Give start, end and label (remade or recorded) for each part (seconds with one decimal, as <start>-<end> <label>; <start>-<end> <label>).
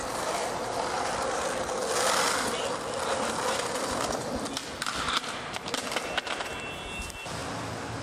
0.0-8.0 recorded